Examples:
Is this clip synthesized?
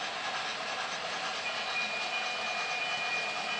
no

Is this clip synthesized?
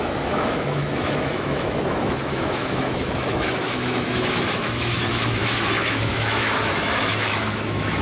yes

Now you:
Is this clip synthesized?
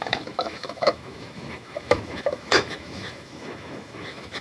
yes